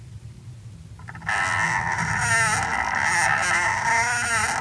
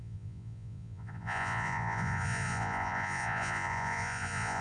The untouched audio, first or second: first